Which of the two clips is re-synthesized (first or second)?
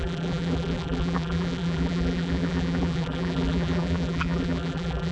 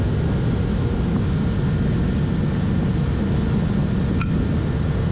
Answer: first